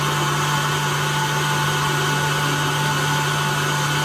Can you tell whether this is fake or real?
real